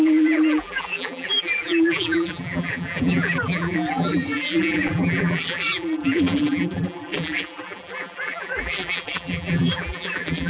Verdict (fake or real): fake